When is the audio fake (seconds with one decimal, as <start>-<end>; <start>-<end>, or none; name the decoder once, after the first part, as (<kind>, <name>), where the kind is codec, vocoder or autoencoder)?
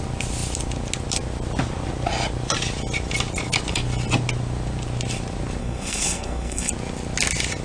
5.6-6.7 (codec, SNAC)